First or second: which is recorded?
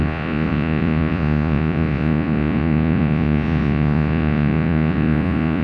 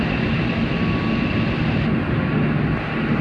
second